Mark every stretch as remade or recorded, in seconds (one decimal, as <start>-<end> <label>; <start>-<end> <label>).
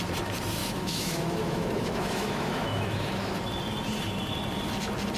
0.0-0.6 recorded; 0.6-3.3 remade; 3.3-5.2 recorded